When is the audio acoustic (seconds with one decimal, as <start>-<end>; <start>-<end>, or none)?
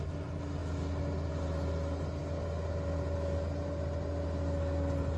0.0-5.2